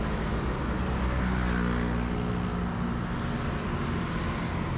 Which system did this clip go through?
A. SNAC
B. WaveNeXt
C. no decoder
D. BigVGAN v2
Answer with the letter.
C